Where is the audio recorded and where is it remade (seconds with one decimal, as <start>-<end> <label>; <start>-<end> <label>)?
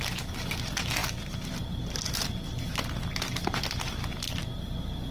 0.0-1.0 recorded; 1.0-1.5 remade; 1.5-5.1 recorded